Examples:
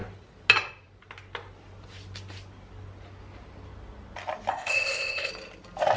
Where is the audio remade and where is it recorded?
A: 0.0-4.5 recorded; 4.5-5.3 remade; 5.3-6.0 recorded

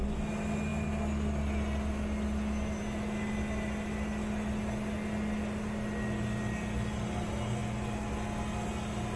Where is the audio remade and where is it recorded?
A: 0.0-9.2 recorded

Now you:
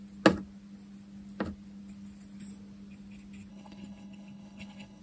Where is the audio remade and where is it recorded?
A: 0.0-3.5 recorded; 3.5-5.0 remade